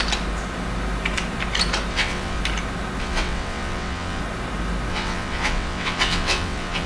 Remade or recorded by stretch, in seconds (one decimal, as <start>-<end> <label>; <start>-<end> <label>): 0.0-1.9 recorded; 1.9-2.4 remade; 2.4-3.0 recorded; 3.0-4.2 remade; 4.2-4.9 recorded; 4.9-6.9 remade